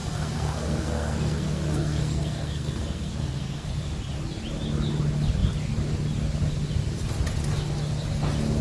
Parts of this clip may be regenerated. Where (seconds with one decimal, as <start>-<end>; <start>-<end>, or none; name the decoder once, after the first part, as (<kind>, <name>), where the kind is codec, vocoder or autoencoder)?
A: 0.0-3.7 (codec, SNAC)